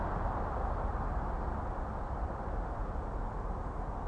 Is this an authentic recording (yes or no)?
yes